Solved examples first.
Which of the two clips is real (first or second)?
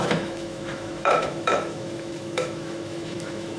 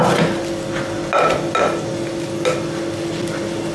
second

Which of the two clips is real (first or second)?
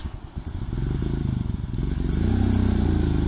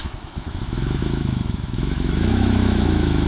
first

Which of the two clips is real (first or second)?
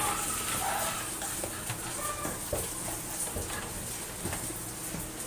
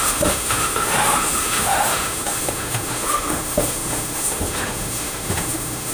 first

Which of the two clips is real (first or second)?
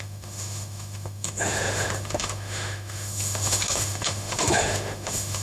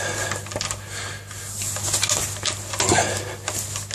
second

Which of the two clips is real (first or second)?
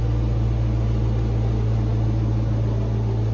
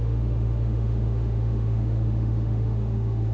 first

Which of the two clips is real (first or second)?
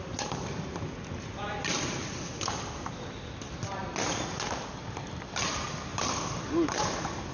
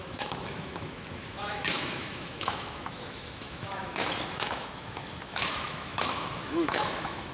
first